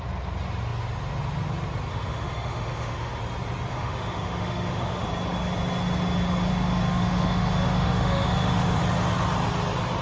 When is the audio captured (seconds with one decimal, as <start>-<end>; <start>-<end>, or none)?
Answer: 0.0-1.9; 3.2-3.7; 5.0-6.5; 8.8-10.0